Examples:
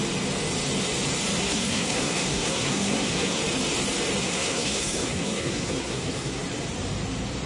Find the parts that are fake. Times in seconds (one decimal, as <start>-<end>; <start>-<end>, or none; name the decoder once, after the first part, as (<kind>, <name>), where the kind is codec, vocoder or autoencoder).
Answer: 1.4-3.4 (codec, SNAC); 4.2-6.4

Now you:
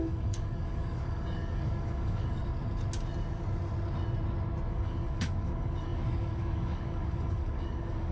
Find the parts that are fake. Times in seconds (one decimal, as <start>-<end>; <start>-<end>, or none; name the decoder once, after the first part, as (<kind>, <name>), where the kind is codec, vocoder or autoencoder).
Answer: 0.0-2.4 (codec, DAC); 4.7-8.1

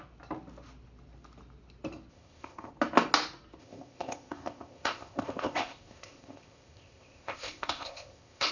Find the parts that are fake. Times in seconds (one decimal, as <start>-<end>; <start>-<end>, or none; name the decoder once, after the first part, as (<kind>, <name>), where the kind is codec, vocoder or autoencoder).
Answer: 2.1-2.7 (codec, ZipCodec); 3.6-8.5

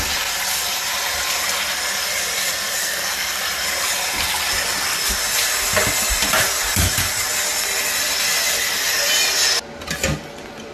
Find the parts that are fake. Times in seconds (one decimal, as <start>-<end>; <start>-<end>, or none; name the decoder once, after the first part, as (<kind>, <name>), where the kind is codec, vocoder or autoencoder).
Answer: 2.8-3.4 (codec, SNAC)

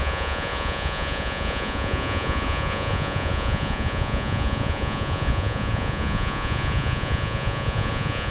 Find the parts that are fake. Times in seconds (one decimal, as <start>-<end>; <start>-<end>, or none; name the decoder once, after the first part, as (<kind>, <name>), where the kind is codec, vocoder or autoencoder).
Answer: 0.0-8.3 (vocoder, Vocos)

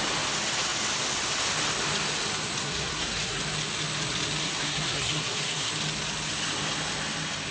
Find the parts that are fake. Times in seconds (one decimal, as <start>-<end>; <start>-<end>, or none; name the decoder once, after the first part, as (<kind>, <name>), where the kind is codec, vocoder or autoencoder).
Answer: 2.6-3.4 (codec, SNAC); 4.4-5.7

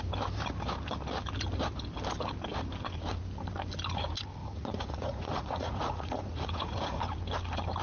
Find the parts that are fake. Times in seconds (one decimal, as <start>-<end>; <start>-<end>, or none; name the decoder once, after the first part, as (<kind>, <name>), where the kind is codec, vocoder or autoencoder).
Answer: 4.4-7.0 (vocoder, Vocos)